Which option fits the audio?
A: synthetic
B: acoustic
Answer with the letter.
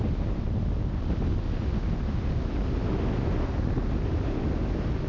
B